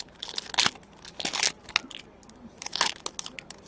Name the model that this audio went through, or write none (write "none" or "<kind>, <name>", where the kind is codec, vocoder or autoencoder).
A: none